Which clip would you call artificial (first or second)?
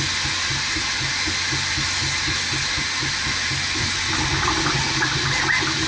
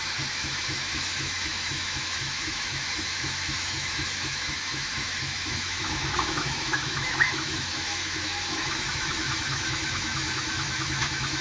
second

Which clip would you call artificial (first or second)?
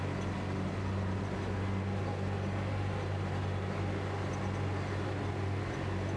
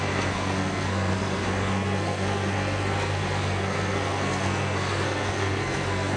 second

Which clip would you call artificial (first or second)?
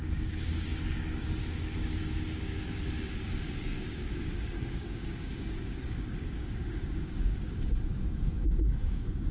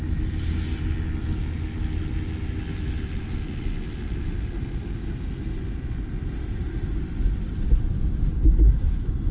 first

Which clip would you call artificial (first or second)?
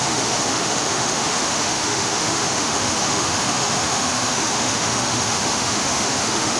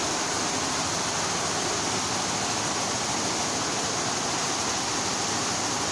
first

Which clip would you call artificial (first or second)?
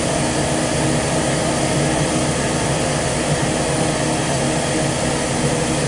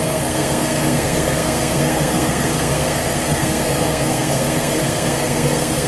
second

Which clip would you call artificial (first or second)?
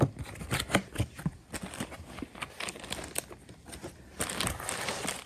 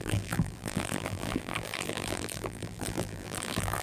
second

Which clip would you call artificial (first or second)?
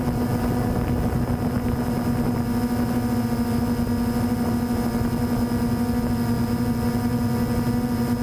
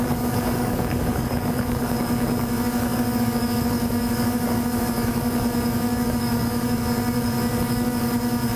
second